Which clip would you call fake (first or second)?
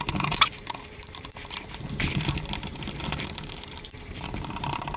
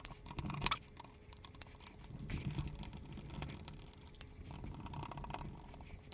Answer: first